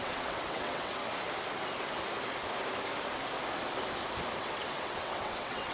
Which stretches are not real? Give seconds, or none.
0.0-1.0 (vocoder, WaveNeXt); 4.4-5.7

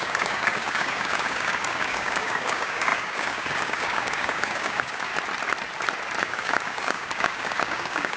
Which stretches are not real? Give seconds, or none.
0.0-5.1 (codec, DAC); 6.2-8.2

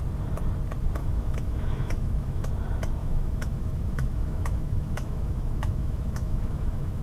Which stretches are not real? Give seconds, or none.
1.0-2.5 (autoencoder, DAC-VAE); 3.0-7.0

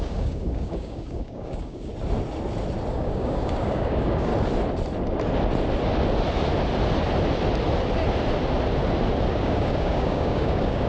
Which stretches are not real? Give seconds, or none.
0.0-1.9 (codec, DAC); 2.9-4.3; 9.3-10.9

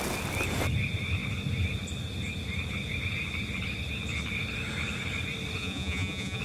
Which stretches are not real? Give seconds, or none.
5.6-6.4 (vocoder, Vocos)